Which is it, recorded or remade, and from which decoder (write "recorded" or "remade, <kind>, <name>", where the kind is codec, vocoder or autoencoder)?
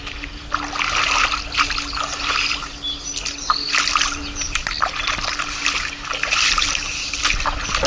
recorded